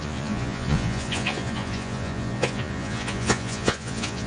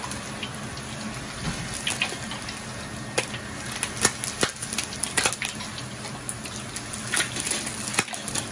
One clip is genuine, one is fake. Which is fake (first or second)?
first